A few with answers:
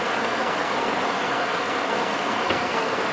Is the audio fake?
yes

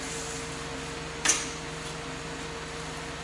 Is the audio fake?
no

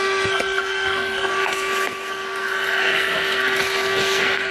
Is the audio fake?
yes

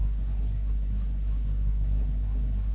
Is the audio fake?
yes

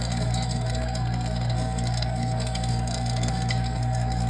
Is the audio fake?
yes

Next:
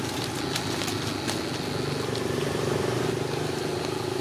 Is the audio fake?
no